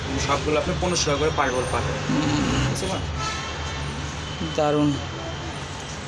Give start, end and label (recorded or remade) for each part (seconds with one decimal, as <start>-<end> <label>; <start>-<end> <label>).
0.0-6.1 recorded